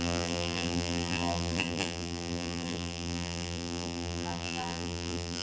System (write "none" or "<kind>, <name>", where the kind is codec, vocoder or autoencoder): vocoder, BigVGAN v2